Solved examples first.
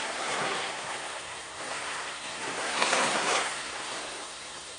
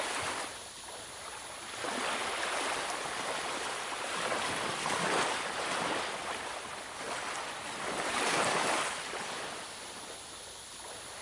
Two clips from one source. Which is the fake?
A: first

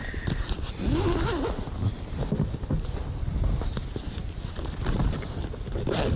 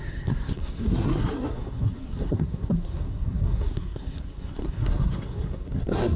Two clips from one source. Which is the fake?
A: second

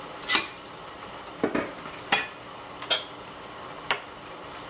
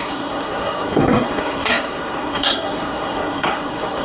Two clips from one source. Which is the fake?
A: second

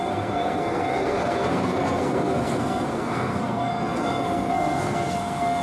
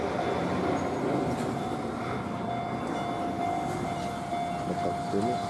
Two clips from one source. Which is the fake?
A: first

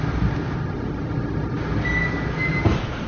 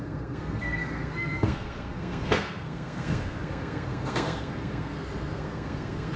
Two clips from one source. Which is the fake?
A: second